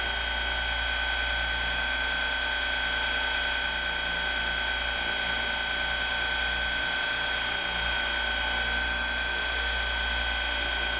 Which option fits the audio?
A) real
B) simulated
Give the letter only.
A